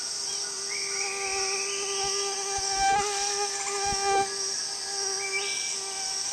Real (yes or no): yes